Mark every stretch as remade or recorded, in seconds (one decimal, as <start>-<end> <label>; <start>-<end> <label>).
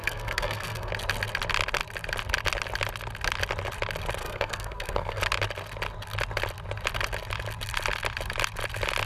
0.0-0.9 remade; 0.9-4.2 recorded; 4.2-5.2 remade; 5.2-9.1 recorded